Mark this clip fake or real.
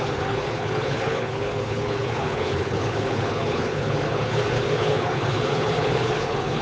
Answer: fake